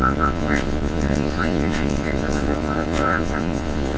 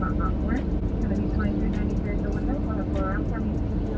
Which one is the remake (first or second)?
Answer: first